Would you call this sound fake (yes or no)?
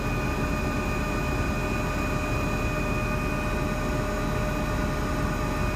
no